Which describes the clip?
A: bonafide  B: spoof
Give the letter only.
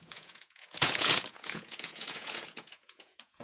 B